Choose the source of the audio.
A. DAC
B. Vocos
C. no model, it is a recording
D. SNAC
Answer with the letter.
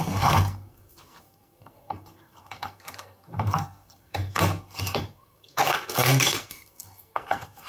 D